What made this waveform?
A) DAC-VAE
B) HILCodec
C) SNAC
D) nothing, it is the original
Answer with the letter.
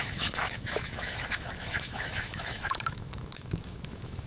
A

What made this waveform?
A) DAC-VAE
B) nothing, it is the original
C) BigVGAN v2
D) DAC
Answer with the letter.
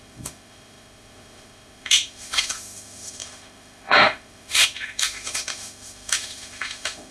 A